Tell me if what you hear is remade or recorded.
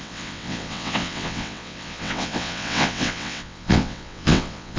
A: remade